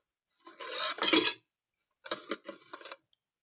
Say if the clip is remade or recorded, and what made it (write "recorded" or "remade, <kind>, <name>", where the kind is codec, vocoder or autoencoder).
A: recorded